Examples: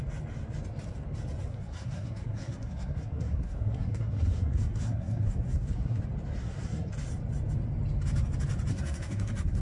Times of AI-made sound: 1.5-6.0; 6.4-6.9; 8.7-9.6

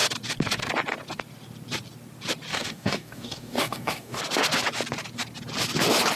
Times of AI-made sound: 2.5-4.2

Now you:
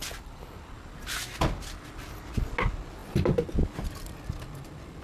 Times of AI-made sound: none

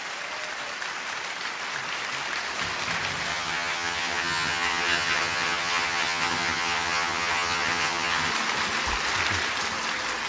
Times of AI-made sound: 3.3-8.3

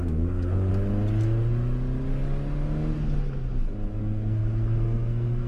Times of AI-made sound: 0.0-0.7; 4.0-5.5